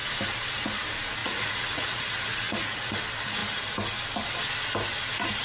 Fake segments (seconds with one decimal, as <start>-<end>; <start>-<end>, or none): 1.2-3.0